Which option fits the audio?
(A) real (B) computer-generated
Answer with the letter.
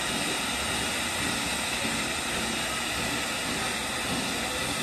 A